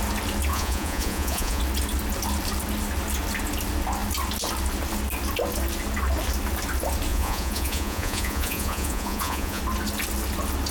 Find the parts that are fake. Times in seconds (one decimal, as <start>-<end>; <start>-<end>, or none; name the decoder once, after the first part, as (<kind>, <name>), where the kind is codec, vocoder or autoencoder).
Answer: 0.5-1.6 (vocoder, Vocos); 7.1-9.6